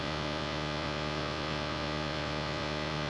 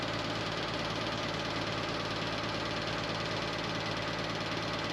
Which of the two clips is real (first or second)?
second